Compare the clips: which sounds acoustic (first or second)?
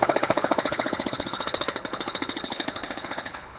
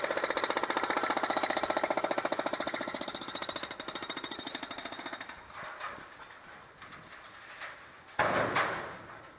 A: second